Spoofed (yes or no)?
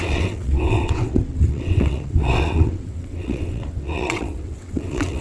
yes